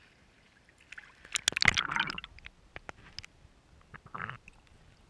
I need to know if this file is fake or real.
real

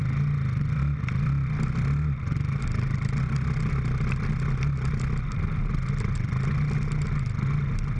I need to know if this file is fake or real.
real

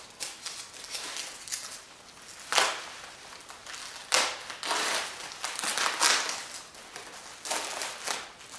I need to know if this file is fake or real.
real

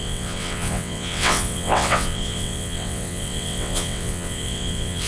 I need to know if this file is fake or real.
fake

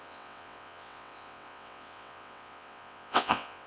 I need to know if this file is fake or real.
fake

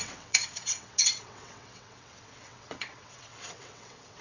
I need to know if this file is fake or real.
fake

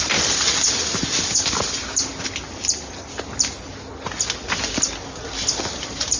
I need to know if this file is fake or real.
real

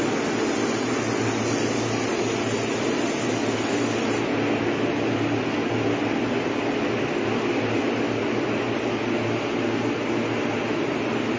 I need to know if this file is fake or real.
real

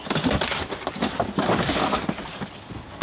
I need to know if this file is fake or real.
real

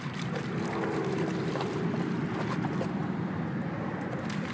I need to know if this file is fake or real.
real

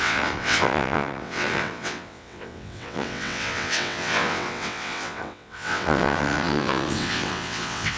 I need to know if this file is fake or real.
fake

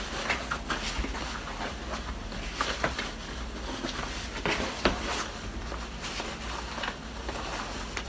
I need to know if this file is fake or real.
real